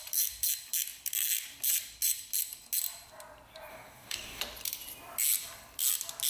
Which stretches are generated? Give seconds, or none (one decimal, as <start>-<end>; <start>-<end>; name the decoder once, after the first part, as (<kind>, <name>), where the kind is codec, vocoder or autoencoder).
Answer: 3.7-4.4 (codec, DAC)